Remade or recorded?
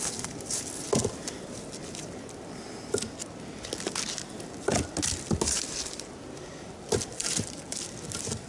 recorded